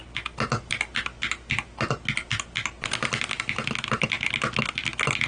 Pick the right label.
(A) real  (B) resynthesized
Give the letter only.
A